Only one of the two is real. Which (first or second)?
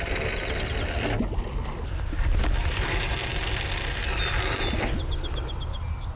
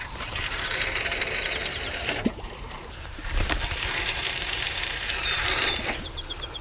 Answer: first